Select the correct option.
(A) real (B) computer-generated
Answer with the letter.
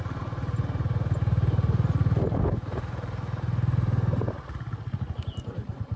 A